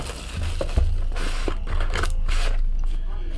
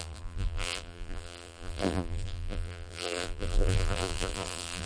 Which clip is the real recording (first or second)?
first